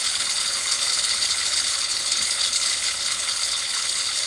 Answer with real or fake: fake